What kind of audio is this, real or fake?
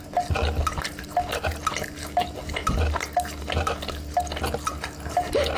real